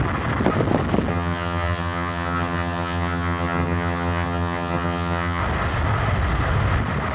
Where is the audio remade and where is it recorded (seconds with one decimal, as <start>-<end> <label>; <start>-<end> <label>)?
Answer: 0.0-1.1 recorded; 1.1-5.4 remade; 5.4-7.1 recorded